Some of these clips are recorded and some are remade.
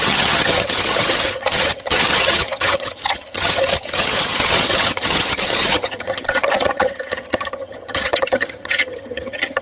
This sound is remade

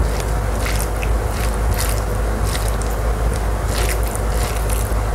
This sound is recorded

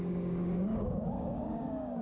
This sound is remade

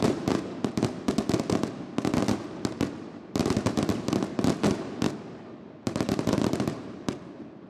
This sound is remade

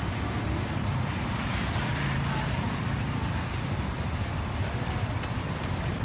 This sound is remade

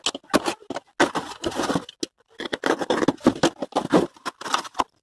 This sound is recorded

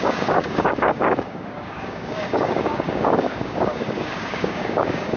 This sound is remade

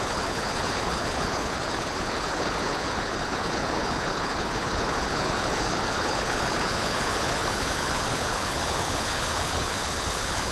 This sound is remade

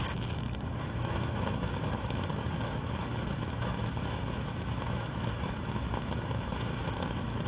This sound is remade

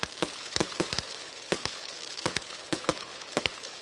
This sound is remade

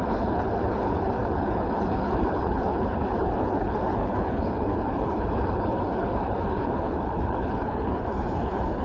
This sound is remade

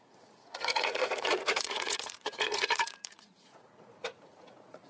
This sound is remade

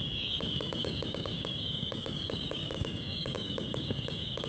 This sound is remade